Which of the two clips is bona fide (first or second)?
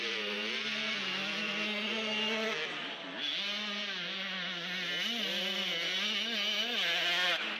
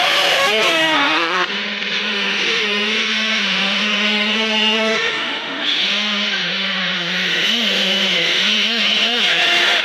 first